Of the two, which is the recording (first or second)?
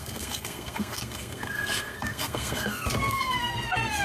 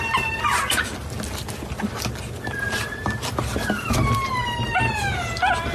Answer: second